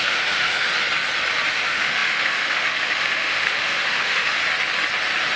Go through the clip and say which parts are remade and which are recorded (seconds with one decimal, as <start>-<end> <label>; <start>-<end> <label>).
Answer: 0.0-0.7 remade; 0.7-1.5 recorded; 1.5-4.4 remade; 4.4-5.4 recorded